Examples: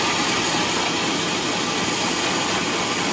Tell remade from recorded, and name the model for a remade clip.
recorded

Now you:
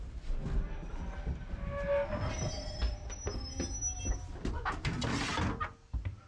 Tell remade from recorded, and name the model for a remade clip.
recorded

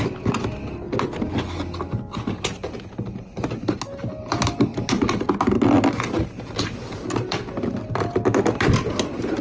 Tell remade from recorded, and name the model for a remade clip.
recorded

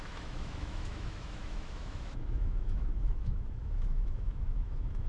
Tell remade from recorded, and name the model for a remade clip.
remade, autoencoder, DAC-VAE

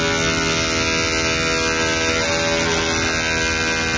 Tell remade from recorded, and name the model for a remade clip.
recorded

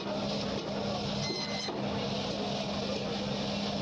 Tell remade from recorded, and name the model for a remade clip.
recorded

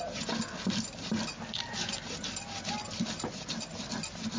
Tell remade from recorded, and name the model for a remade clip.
recorded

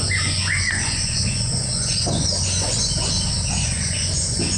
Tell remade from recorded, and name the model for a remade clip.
remade, vocoder, Vocos